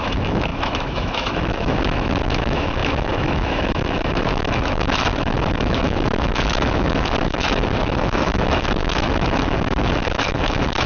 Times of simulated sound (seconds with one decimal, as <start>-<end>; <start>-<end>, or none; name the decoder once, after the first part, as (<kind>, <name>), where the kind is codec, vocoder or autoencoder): 0.0-10.9 (autoencoder, DAC-VAE)